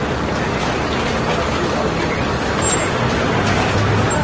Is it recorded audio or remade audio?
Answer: recorded